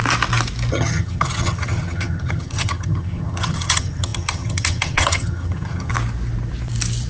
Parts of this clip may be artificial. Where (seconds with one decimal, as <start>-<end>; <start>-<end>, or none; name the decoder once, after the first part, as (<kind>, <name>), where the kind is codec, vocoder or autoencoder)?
0.7-5.9 (vocoder, HiFi-GAN)